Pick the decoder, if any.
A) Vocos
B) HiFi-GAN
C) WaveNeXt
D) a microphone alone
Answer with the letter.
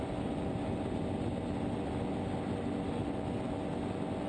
D